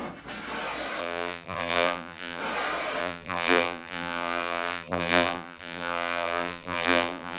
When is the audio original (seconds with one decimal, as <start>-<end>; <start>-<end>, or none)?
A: 0.0-1.0; 2.4-3.0